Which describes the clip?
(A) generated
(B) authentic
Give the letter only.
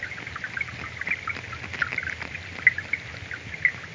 B